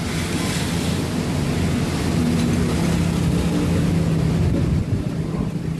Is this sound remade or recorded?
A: recorded